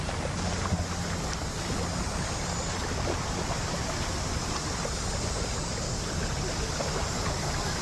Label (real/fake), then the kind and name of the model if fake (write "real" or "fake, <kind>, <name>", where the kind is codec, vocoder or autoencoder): real